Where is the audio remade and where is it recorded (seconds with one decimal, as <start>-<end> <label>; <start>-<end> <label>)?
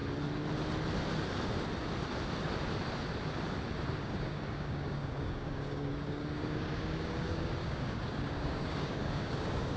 0.0-4.0 recorded; 4.0-9.8 remade